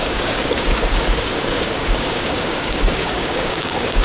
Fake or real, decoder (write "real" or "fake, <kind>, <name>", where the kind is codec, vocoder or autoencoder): fake, codec, DAC